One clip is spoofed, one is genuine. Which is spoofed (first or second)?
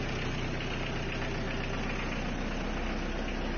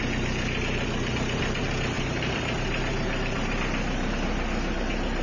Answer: second